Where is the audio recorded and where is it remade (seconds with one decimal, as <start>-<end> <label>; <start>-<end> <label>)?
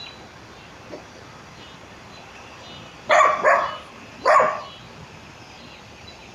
0.0-6.3 recorded